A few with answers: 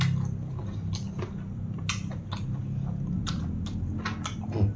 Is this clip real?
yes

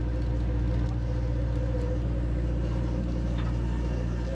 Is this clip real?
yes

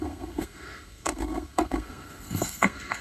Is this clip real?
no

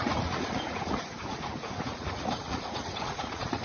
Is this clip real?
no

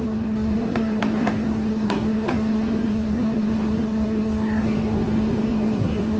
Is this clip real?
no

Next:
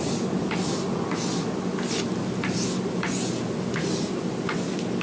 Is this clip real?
yes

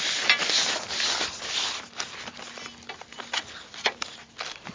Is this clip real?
yes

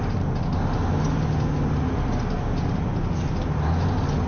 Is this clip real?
yes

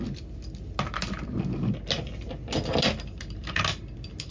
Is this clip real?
yes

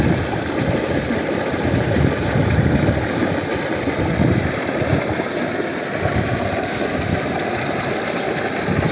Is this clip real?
yes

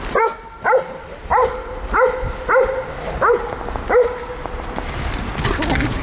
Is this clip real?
yes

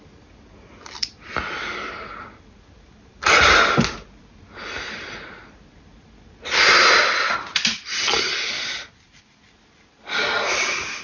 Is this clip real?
yes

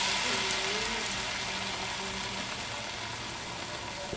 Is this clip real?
yes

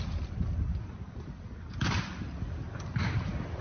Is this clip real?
yes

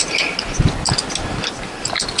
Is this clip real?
yes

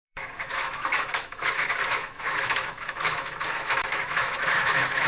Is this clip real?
no